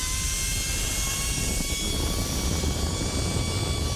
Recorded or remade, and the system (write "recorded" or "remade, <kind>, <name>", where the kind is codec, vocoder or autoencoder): recorded